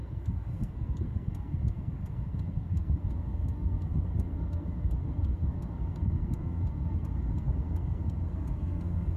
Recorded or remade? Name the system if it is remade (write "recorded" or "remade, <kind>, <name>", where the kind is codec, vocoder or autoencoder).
remade, codec, SNAC